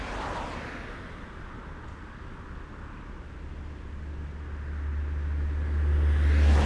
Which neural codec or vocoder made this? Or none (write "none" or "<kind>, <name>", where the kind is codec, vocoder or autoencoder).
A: none